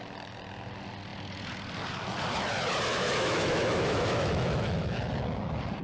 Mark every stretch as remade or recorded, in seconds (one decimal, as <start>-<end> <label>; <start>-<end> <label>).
0.0-2.9 recorded; 2.9-5.1 remade; 5.1-5.8 recorded